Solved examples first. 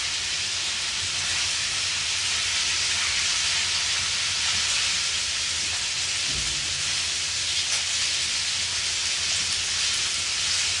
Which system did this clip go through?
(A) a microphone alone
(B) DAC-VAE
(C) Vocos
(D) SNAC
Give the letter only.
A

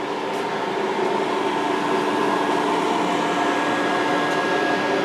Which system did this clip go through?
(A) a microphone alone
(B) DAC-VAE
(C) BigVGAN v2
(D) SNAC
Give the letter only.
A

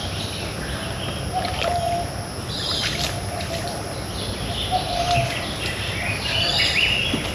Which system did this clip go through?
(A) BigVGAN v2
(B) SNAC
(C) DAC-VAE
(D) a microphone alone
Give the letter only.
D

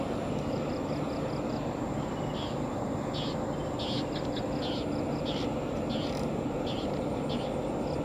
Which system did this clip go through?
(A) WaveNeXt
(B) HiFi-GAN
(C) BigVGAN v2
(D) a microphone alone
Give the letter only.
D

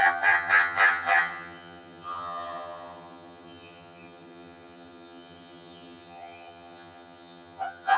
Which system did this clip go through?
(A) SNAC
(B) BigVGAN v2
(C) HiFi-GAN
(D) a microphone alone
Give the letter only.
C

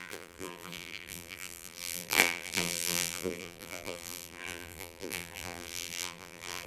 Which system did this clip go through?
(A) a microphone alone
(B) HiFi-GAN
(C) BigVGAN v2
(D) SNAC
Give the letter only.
C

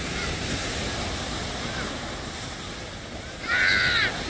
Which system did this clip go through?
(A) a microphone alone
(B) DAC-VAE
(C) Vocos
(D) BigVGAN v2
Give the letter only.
A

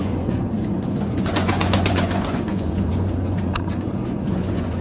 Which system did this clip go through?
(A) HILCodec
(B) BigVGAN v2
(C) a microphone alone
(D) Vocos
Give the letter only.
D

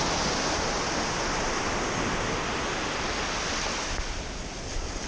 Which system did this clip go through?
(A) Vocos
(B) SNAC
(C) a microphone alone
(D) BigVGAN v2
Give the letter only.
C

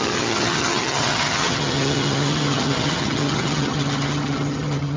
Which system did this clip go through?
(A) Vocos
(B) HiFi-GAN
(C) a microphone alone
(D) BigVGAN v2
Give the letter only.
B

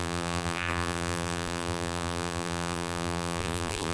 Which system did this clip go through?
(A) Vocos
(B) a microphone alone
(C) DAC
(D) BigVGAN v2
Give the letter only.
D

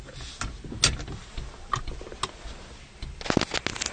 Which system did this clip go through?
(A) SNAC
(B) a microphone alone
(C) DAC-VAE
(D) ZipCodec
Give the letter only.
B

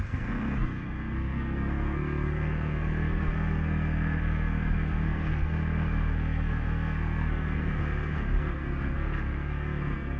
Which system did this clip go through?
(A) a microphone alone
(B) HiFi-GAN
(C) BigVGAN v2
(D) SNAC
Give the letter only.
D